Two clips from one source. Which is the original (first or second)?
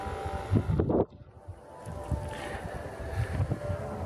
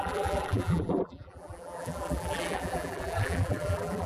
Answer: first